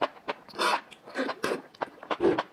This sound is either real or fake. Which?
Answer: real